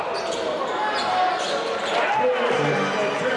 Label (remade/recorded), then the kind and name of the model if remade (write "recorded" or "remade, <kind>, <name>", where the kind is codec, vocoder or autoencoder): recorded